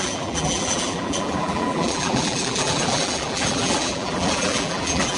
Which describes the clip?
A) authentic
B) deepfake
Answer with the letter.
B